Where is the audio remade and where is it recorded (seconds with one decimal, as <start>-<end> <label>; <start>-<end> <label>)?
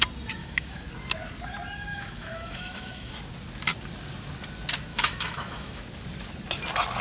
0.0-0.4 recorded; 0.4-0.9 remade; 0.9-1.9 recorded; 1.9-3.1 remade; 3.1-4.9 recorded; 4.9-5.8 remade; 5.8-7.0 recorded